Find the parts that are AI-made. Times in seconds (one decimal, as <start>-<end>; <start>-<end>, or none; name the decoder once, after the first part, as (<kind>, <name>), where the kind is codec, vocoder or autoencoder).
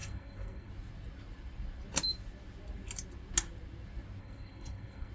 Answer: 0.0-0.7 (codec, SNAC); 4.2-5.1